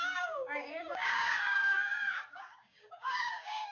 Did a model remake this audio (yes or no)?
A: yes